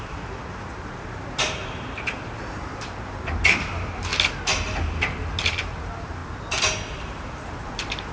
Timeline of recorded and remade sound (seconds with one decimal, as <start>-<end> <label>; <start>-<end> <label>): 0.0-4.1 remade; 4.1-5.4 recorded; 5.4-6.2 remade; 6.2-7.0 recorded; 7.0-8.1 remade